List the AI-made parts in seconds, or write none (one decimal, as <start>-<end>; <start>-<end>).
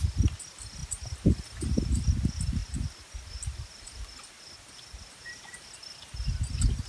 none